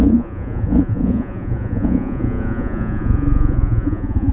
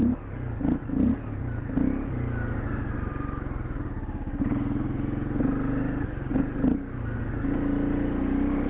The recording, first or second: second